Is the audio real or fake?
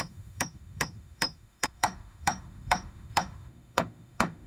fake